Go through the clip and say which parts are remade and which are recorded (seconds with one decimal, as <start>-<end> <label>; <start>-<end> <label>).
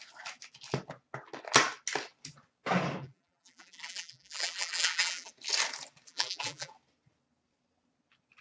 0.0-3.0 recorded; 3.0-5.3 remade; 5.3-6.1 recorded; 6.1-6.7 remade; 6.7-8.4 recorded